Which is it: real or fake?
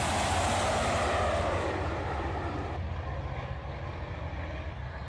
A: real